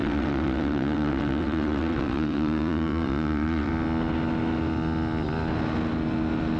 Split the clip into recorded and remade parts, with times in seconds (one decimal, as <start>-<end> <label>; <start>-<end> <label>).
0.0-3.7 remade; 3.7-6.6 recorded